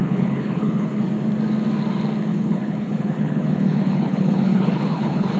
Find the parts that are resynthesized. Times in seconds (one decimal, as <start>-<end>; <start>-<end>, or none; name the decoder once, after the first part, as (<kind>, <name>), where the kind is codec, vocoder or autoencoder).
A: 0.0-1.0 (codec, HILCodec); 2.3-5.4